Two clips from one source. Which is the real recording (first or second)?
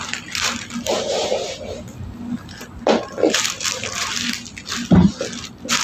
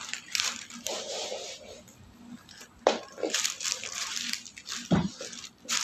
first